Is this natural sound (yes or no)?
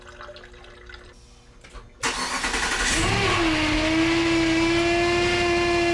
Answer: yes